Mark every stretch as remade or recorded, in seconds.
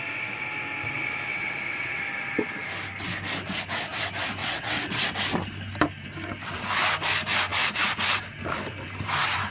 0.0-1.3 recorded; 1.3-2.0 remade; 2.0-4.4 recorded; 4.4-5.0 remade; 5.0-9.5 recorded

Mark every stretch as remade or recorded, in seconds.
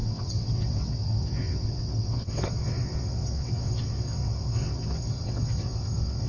0.0-6.3 remade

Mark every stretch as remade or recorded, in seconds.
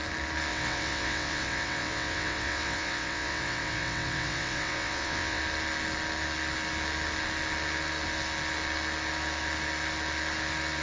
0.0-0.5 recorded; 0.5-5.4 remade; 5.4-10.8 recorded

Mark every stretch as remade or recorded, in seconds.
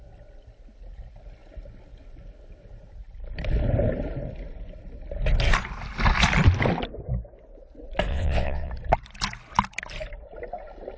0.0-8.1 recorded; 8.1-8.7 remade; 8.7-11.0 recorded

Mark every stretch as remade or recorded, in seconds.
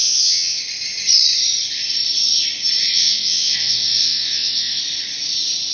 0.0-0.6 remade; 0.6-2.9 recorded; 2.9-4.8 remade; 4.8-5.7 recorded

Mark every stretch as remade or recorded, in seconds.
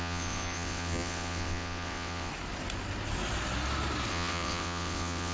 0.0-2.3 remade; 2.3-4.1 recorded; 4.1-5.3 remade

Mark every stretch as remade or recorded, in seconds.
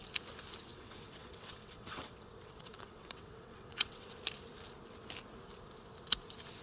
0.0-0.7 recorded; 0.7-4.1 remade; 4.1-6.6 recorded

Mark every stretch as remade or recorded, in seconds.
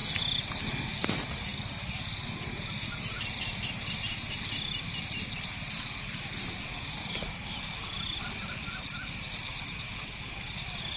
0.0-11.0 recorded